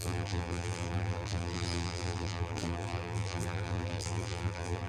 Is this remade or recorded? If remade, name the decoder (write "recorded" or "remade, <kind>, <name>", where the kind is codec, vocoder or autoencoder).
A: remade, vocoder, BigVGAN v2